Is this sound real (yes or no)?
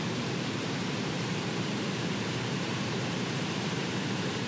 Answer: no